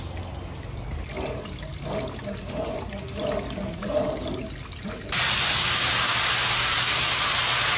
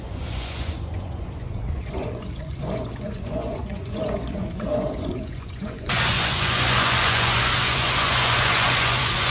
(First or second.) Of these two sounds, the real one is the first